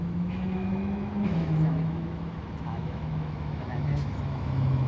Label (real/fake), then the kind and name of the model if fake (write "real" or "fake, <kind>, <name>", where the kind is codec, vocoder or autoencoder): fake, autoencoder, DAC-VAE